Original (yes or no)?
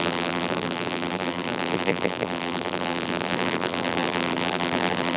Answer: no